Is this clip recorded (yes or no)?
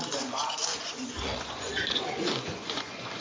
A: no